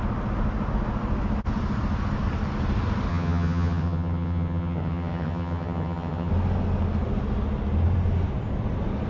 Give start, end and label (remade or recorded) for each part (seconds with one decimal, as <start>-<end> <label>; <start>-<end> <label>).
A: 0.0-3.1 recorded; 3.1-6.3 remade; 6.3-9.1 recorded